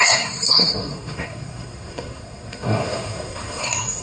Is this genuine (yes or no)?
no